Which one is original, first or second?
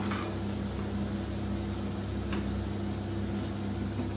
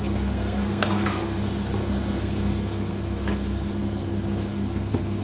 first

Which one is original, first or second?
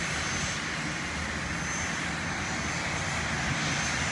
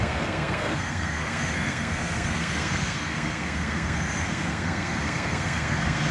first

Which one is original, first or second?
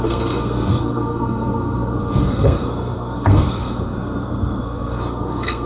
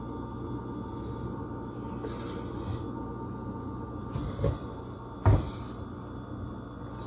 second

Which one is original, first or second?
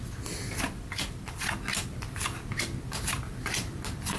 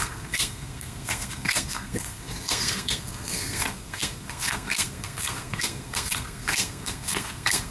first